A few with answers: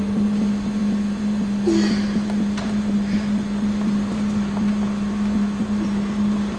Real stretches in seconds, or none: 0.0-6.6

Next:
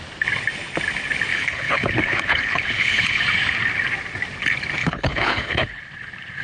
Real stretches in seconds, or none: 0.0-1.3; 3.2-4.8; 5.8-6.4

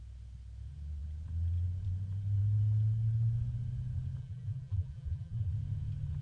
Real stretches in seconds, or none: 0.0-4.2; 5.5-6.2

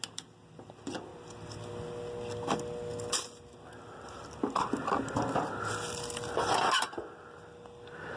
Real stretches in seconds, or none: 0.0-8.2

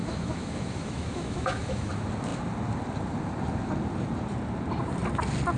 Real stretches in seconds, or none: 1.9-5.6

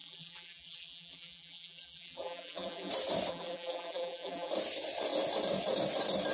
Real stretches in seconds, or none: 2.9-3.3; 4.5-6.3

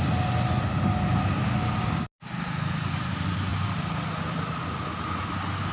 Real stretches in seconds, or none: 0.0-5.7